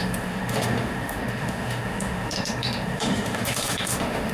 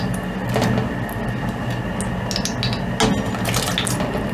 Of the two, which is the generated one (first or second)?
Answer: first